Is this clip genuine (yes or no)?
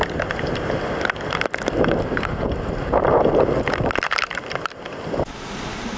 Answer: yes